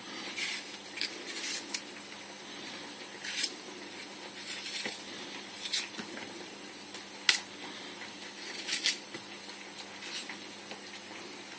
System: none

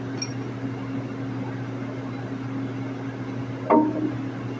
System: none